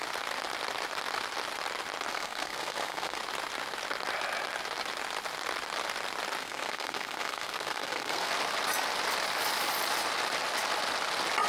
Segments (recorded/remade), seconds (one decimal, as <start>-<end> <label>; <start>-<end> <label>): 0.0-2.1 recorded; 2.1-3.2 remade; 3.2-6.4 recorded; 6.4-8.3 remade; 8.3-11.5 recorded

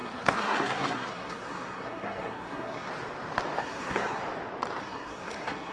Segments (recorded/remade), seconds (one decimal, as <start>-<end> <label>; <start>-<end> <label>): 0.0-2.9 remade; 2.9-3.6 recorded; 3.6-4.2 remade; 4.2-4.8 recorded; 4.8-5.7 remade